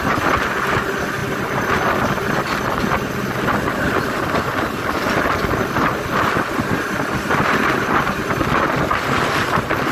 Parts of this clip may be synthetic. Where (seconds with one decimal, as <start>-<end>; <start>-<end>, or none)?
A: none